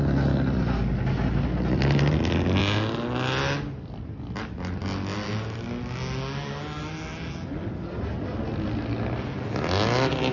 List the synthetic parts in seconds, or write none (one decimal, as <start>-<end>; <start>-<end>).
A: none